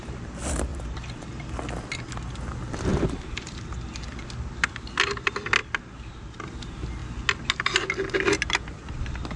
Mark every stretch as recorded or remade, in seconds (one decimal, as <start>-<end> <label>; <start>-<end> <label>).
0.0-0.7 recorded; 0.7-2.0 remade; 2.0-9.4 recorded